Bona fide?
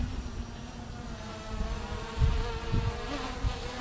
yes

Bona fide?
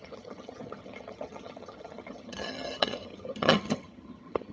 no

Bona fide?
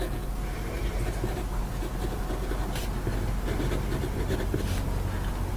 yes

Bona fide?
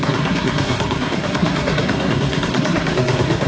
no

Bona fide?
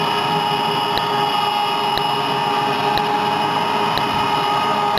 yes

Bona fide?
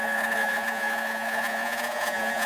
no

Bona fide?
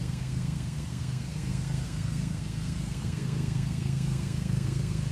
no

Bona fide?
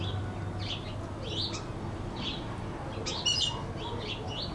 yes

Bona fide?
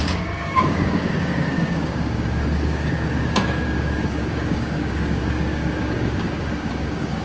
no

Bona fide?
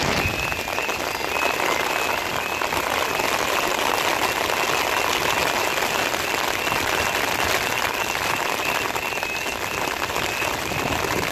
yes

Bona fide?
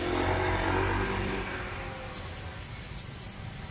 yes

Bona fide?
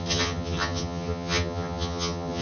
no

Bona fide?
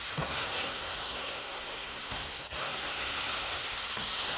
no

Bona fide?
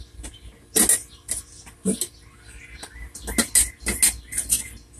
yes